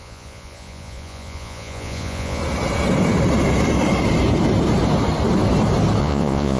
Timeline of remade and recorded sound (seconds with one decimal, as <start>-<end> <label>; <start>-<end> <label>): 0.0-2.4 remade; 2.4-6.0 recorded; 6.0-6.6 remade